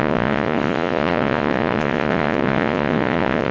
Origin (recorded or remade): remade